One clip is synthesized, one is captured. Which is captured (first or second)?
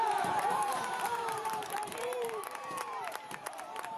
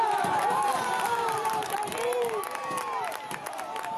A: second